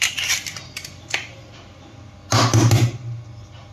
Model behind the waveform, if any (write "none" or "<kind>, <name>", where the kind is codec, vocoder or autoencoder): none